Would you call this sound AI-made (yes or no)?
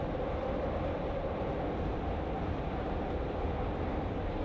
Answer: no